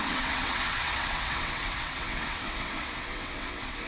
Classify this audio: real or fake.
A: fake